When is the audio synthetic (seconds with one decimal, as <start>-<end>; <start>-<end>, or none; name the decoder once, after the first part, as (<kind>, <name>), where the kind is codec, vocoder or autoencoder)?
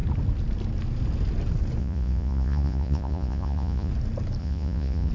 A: 1.8-3.9 (vocoder, Vocos); 4.4-5.1